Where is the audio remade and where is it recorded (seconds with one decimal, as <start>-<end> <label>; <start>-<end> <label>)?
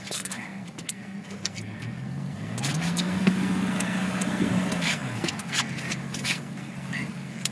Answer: 0.0-7.5 remade